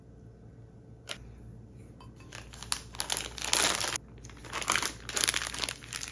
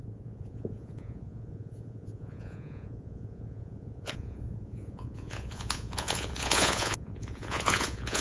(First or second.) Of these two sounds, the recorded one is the first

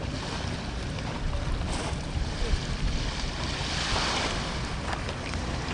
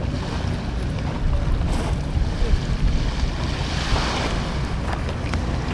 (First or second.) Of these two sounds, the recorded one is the second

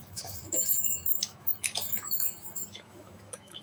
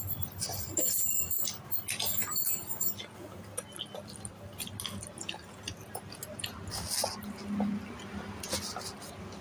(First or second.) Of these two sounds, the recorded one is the second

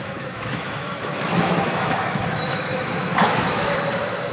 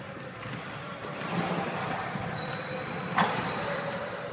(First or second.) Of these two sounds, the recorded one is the second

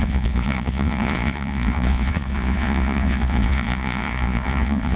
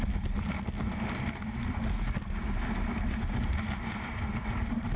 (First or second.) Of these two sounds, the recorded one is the second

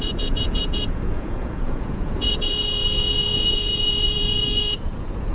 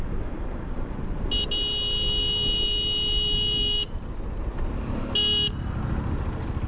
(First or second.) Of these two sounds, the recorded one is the second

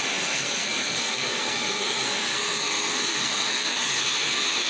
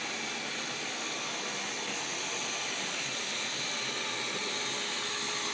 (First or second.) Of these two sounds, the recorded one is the second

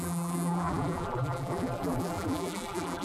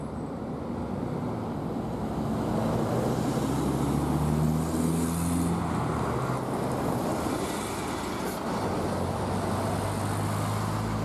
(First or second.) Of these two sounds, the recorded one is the second